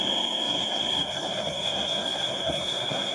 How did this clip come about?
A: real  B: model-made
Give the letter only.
B